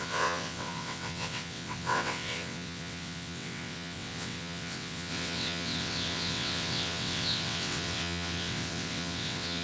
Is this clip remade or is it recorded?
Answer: remade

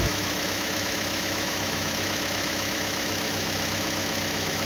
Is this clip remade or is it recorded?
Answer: remade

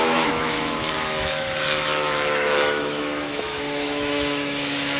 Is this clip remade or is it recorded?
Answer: remade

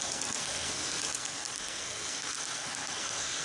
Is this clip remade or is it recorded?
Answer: remade